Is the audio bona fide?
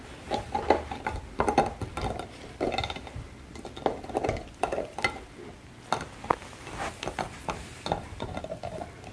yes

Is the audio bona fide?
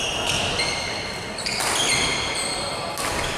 yes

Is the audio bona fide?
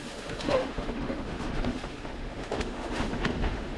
no